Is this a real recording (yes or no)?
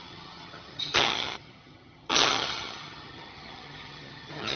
no